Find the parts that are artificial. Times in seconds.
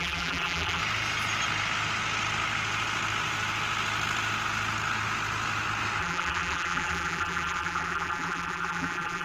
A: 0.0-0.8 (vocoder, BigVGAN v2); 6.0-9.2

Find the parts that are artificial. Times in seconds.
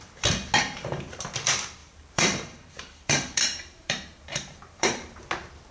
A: 1.8-5.2 (vocoder, BigVGAN v2)